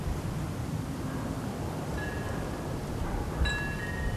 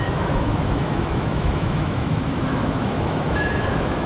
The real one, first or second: first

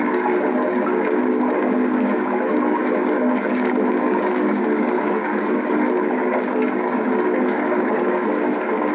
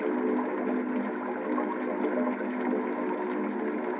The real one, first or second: second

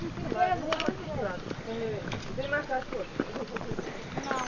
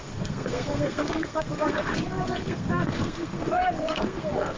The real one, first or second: first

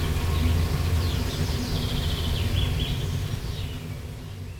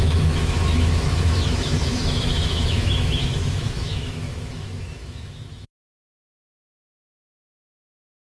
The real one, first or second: first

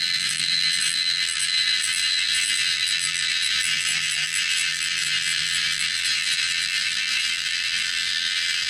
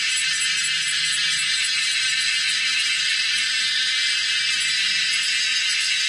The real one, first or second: second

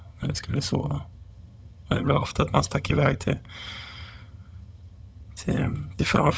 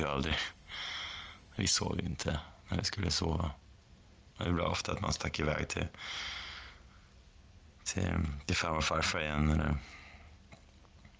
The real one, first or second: second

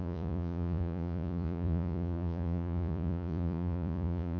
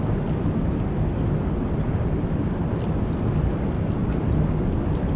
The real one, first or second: second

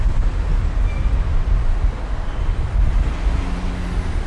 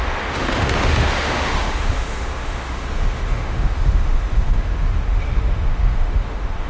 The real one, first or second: first